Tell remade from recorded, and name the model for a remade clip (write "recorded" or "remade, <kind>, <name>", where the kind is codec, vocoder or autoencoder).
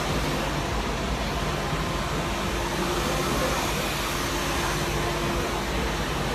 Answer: recorded